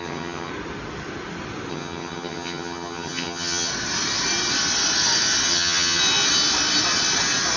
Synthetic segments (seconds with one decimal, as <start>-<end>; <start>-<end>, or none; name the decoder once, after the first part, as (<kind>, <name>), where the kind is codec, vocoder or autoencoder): 0.0-0.5 (vocoder, HiFi-GAN); 1.7-3.7; 5.5-6.0